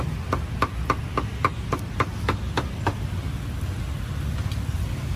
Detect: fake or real real